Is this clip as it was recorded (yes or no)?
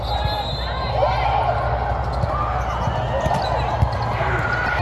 yes